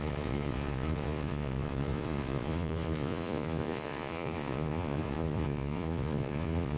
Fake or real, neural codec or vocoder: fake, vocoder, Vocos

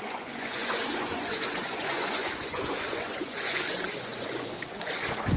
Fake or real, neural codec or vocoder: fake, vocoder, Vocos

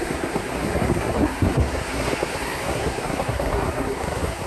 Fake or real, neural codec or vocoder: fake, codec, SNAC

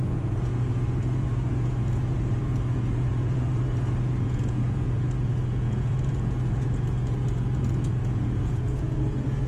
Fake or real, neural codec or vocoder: fake, vocoder, Vocos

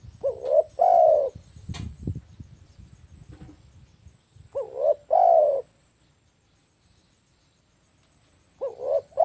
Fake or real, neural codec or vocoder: real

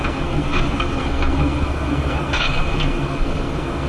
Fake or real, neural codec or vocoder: fake, codec, SNAC